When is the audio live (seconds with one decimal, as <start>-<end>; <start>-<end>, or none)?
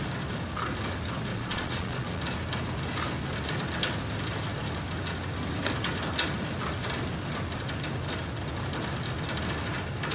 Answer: 0.0-1.3; 2.2-10.1